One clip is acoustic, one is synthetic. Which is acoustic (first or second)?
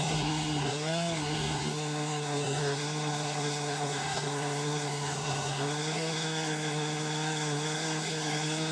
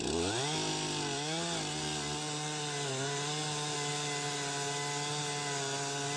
second